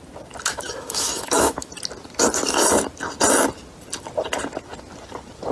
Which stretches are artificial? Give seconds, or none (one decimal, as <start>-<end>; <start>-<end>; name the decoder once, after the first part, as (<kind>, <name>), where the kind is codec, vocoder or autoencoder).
0.5-1.7 (autoencoder, DAC-VAE)